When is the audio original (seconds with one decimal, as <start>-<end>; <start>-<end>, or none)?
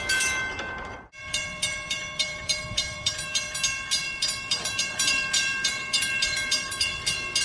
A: 0.0-1.2; 3.6-4.0; 6.9-7.4